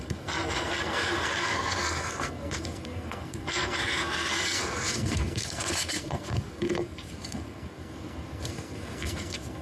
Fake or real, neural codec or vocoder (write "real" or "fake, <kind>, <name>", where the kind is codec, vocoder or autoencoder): fake, codec, SNAC